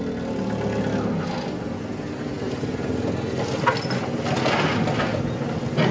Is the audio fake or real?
real